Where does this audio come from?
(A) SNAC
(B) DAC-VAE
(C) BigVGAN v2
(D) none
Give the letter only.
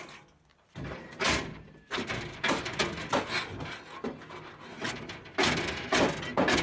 D